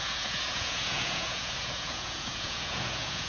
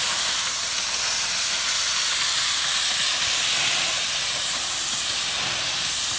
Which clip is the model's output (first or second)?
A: first